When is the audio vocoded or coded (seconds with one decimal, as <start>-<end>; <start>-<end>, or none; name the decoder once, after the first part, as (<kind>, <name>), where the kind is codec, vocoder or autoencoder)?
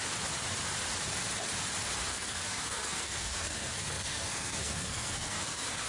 2.1-5.9 (codec, SNAC)